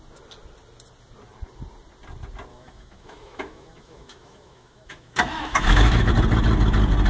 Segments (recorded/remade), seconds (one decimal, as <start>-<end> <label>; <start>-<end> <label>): 0.0-2.5 recorded; 2.5-6.1 remade; 6.1-7.1 recorded